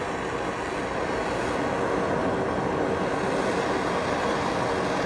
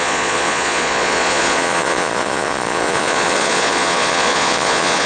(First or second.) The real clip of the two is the first